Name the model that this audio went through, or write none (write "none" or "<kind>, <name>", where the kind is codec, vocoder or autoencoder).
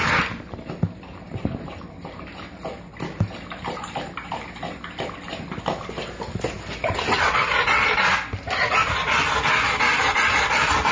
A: none